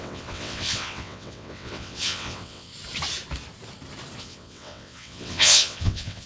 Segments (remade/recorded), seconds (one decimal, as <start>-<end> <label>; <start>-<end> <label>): 0.0-2.7 remade; 2.7-4.2 recorded; 4.2-6.3 remade